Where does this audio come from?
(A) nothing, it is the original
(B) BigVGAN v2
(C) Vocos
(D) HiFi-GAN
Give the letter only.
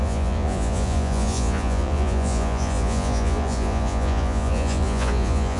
C